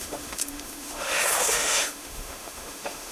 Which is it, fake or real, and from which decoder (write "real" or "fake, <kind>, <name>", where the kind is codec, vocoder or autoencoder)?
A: fake, autoencoder, DAC-VAE